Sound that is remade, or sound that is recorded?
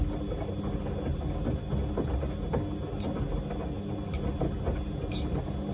recorded